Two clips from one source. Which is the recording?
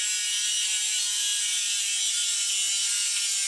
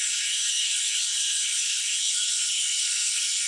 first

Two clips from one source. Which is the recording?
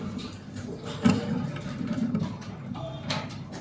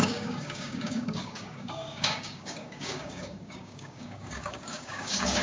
first